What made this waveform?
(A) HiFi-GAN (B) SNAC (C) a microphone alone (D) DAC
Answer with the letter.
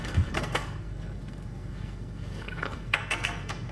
B